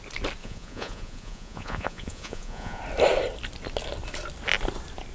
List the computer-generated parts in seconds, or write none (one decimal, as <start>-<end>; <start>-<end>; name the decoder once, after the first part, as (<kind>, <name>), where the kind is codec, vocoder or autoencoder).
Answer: 0.4-2.8 (vocoder, Vocos)